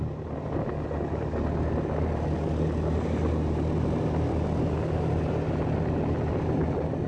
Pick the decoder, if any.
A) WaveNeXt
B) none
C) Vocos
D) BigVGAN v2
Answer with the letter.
B